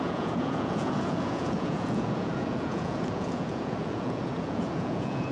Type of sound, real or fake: fake